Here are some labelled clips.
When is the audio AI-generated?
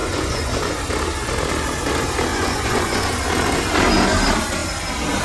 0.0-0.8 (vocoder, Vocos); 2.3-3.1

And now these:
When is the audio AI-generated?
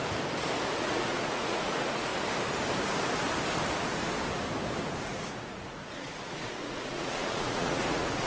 0.8-2.1 (vocoder, Vocos); 5.0-8.3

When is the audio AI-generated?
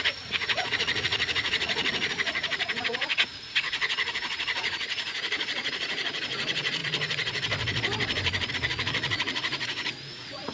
0.0-6.8 (vocoder, Vocos); 8.5-10.5